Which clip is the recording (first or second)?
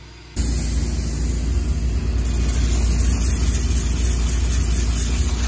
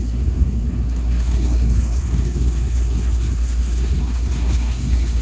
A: first